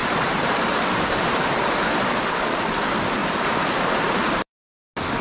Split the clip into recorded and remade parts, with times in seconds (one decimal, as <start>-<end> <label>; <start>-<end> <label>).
0.0-1.5 remade; 1.5-3.2 recorded; 3.2-4.6 remade; 4.6-5.2 recorded